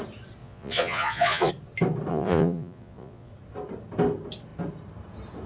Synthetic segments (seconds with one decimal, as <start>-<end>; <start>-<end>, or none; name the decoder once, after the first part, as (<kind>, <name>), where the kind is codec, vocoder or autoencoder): 0.4-1.5 (vocoder, Vocos); 2.1-3.3